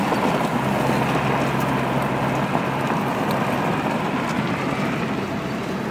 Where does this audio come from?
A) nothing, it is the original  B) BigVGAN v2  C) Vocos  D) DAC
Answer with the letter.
A